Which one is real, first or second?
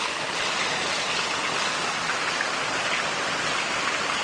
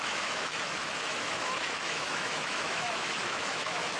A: first